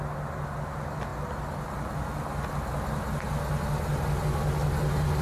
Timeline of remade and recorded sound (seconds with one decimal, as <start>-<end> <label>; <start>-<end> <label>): 0.0-5.2 recorded

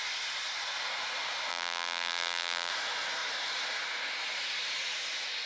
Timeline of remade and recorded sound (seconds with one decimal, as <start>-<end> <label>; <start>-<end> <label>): 0.0-1.5 recorded; 1.5-2.7 remade; 2.7-5.5 recorded

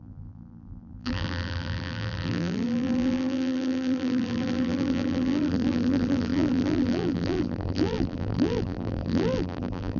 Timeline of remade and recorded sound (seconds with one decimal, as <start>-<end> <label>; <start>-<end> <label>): 0.0-10.0 remade

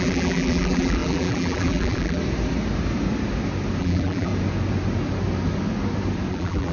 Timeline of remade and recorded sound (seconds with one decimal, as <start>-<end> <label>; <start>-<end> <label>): 0.0-2.2 remade; 2.2-3.8 recorded; 3.8-4.3 remade; 4.3-6.3 recorded; 6.3-6.7 remade

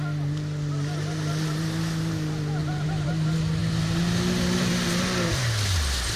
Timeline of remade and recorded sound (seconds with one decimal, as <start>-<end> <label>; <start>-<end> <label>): 0.0-2.6 recorded; 2.6-3.1 remade; 3.1-6.2 recorded

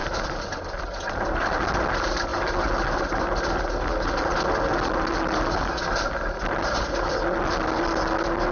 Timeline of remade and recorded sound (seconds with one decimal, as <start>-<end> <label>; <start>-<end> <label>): 0.0-1.5 remade; 1.5-8.5 recorded

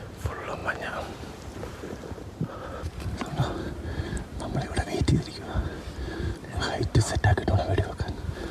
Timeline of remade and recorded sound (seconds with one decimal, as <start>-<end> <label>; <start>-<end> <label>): 0.0-8.5 remade

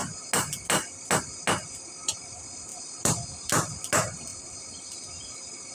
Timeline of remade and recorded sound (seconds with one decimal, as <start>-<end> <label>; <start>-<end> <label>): 0.0-2.7 recorded; 2.7-3.8 remade; 3.8-4.3 recorded; 4.3-5.2 remade; 5.2-5.7 recorded